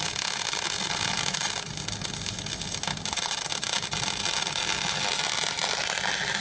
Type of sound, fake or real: real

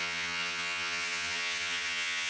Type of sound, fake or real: fake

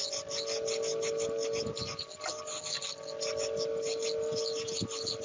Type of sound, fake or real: real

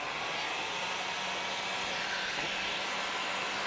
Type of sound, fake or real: real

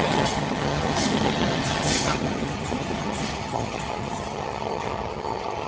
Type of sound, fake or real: fake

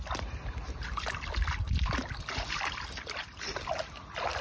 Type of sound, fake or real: real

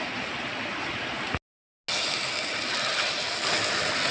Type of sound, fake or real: real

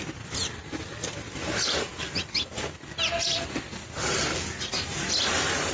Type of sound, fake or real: real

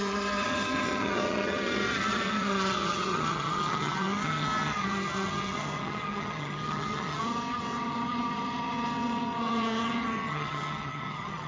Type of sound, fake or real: fake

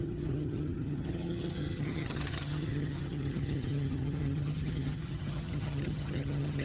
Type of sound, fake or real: fake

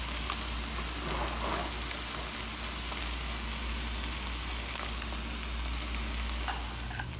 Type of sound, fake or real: real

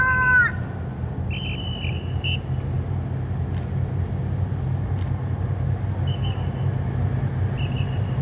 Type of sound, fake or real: real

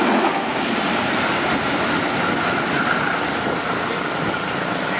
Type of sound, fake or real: real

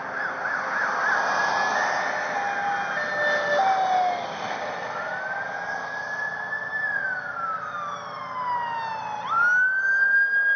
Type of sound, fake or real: real